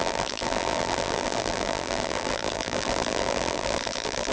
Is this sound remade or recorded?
remade